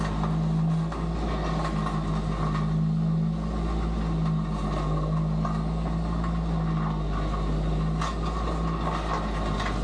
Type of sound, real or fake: real